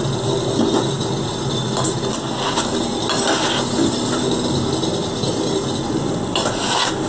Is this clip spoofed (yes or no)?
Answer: no